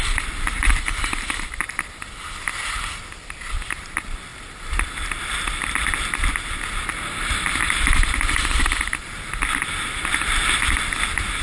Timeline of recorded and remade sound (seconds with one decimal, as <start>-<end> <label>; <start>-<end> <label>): 0.0-7.6 recorded; 7.6-8.1 remade; 8.1-11.4 recorded